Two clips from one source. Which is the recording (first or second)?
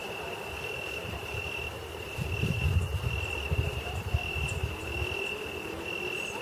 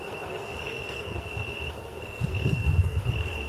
first